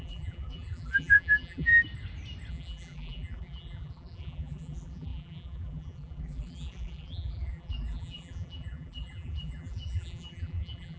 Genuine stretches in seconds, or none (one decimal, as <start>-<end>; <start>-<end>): 1.7-2.5